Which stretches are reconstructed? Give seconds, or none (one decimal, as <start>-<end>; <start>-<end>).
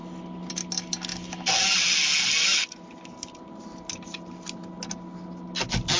none